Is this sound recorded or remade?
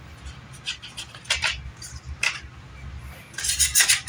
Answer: recorded